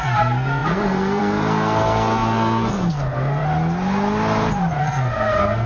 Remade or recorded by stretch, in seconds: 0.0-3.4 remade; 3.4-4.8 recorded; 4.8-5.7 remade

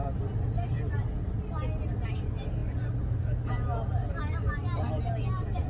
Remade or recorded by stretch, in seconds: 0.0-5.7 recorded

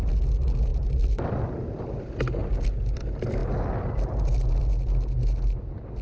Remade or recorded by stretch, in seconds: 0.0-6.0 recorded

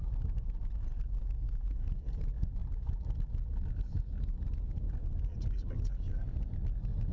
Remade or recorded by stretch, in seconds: 0.0-7.1 recorded